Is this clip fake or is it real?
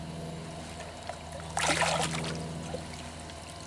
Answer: real